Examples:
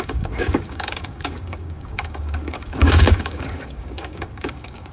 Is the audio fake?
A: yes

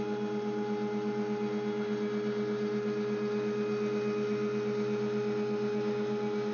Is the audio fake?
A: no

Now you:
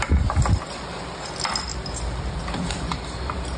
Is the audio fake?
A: yes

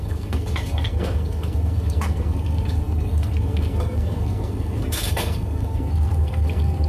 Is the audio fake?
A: yes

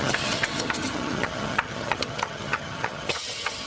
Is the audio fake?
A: yes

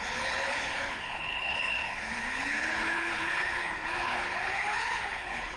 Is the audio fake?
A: yes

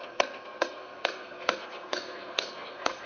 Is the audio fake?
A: yes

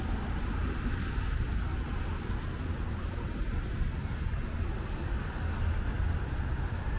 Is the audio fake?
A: no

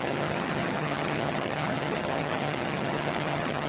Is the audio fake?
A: yes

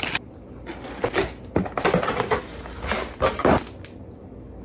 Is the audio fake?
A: no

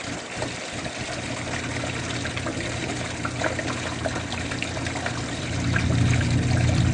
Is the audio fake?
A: no